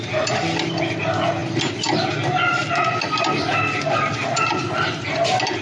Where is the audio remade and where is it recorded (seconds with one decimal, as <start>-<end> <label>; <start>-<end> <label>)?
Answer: 0.0-5.6 recorded